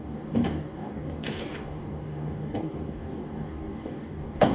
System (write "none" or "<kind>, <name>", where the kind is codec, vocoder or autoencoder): codec, DAC